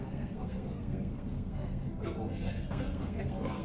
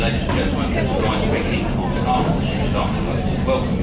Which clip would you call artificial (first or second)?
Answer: first